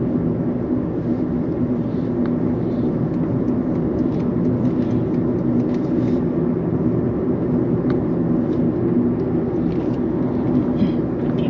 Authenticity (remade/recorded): recorded